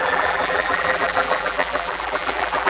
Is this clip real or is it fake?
fake